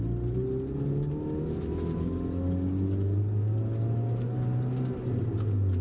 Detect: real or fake real